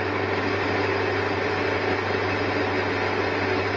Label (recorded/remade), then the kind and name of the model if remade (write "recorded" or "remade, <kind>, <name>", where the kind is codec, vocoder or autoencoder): recorded